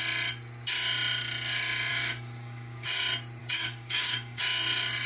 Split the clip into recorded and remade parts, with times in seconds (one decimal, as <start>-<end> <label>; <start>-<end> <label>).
0.0-1.9 recorded; 1.9-3.0 remade; 3.0-3.4 recorded; 3.4-4.4 remade; 4.4-5.1 recorded